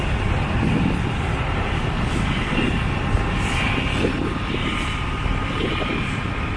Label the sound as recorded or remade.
recorded